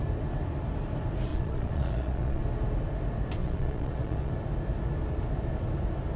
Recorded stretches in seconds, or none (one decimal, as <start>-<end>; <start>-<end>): 0.0-1.3; 2.4-3.4; 4.3-6.2